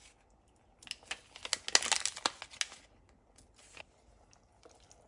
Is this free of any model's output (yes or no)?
yes